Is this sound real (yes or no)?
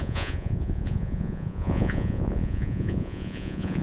no